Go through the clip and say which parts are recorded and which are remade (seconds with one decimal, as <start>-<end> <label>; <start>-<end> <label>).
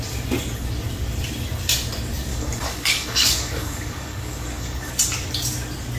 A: 0.0-2.3 recorded; 2.3-4.9 remade; 4.9-6.0 recorded